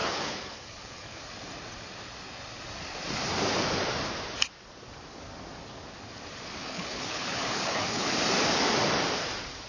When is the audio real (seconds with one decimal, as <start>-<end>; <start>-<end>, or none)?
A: 1.2-6.6; 8.1-9.7